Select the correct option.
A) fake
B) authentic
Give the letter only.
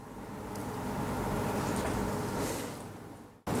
B